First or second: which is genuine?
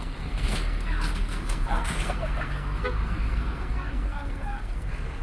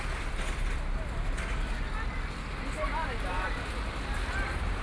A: second